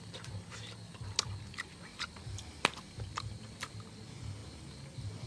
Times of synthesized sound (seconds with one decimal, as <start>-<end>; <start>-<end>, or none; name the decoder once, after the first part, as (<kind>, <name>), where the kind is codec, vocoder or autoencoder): 1.9-2.6 (vocoder, BigVGAN v2)